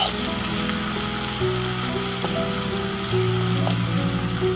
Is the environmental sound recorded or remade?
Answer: recorded